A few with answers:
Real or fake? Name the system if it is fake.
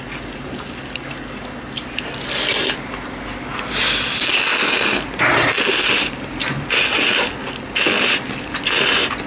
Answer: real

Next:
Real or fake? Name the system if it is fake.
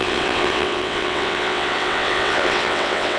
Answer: fake, vocoder, WaveNeXt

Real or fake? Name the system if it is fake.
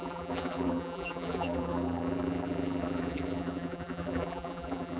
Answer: fake, vocoder, BigVGAN v2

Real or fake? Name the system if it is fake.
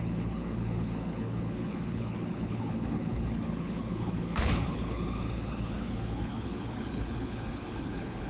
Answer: fake, codec, HILCodec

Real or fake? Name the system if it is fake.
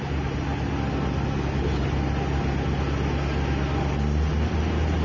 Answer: real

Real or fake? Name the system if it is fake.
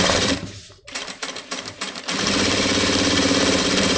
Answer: fake, vocoder, BigVGAN v2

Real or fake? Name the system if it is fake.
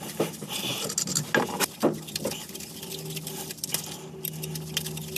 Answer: real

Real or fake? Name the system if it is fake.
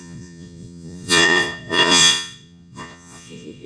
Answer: fake, vocoder, Vocos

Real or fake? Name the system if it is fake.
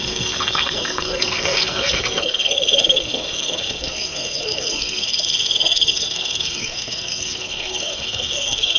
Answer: fake, codec, SNAC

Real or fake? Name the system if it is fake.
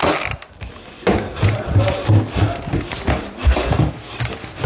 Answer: real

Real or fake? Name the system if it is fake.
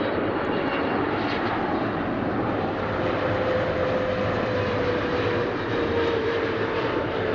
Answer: fake, vocoder, BigVGAN v2